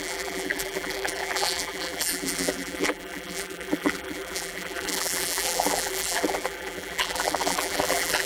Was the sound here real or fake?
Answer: fake